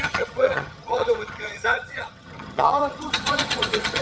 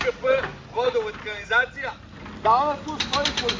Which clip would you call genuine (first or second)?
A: second